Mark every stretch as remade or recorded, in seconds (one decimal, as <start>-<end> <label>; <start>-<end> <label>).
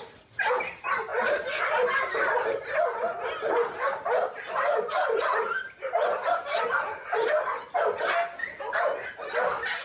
0.0-1.1 recorded; 1.1-6.3 remade; 6.3-9.8 recorded